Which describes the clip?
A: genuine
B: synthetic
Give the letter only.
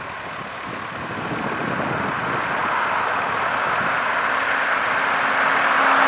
A